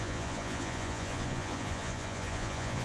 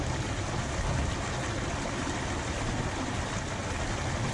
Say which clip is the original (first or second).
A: second